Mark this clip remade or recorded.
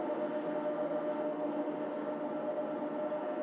recorded